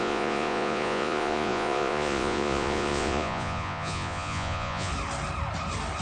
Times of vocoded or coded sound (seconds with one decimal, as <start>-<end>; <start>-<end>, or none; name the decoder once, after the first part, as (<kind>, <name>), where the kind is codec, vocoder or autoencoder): 0.0-4.9 (vocoder, Vocos)